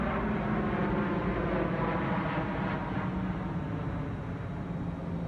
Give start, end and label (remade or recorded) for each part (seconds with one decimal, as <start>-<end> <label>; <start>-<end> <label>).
0.0-5.3 recorded

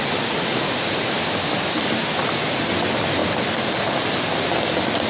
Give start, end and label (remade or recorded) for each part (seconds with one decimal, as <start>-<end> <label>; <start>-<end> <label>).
0.0-3.2 recorded; 3.2-3.8 remade; 3.8-5.1 recorded

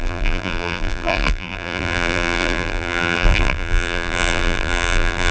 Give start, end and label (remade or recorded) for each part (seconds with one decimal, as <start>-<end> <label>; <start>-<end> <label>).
0.0-5.3 remade